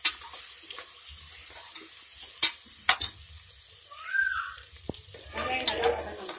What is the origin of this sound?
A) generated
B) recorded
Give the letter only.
B